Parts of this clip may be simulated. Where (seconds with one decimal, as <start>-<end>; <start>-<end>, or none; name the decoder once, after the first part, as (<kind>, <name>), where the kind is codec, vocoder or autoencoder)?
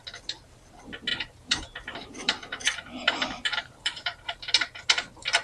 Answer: 1.1-4.3 (vocoder, BigVGAN v2)